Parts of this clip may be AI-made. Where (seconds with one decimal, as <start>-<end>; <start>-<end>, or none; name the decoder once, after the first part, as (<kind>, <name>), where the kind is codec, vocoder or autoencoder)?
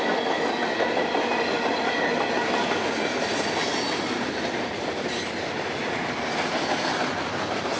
2.6-6.5 (vocoder, BigVGAN v2)